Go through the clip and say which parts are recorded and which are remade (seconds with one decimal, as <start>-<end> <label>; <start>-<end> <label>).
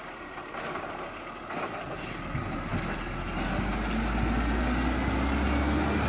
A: 0.0-6.1 recorded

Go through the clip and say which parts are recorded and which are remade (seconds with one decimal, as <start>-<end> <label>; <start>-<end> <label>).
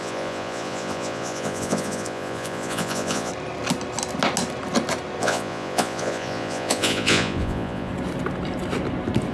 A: 0.0-3.3 remade; 3.3-5.2 recorded; 5.2-7.9 remade; 7.9-9.3 recorded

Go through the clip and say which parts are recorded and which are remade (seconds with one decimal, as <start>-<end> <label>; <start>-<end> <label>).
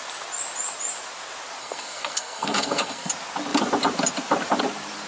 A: 0.0-1.6 recorded; 1.6-3.1 remade; 3.1-5.1 recorded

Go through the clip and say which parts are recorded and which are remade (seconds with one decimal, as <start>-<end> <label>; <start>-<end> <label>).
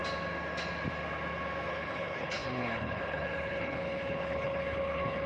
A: 0.0-1.7 recorded; 1.7-5.3 remade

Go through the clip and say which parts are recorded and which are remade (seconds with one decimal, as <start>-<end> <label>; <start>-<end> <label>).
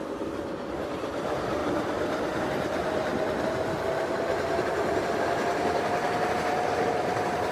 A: 0.0-7.5 recorded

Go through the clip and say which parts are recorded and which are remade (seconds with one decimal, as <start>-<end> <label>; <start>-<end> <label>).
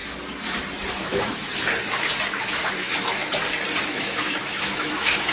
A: 0.0-0.9 recorded; 0.9-1.5 remade; 1.5-2.3 recorded; 2.3-3.2 remade; 3.2-3.9 recorded; 3.9-5.3 remade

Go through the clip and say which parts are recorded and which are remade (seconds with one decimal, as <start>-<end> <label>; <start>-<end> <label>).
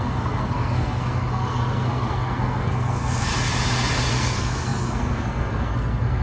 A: 0.0-3.3 remade; 3.3-4.1 recorded; 4.1-6.2 remade